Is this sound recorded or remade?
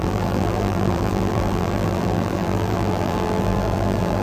remade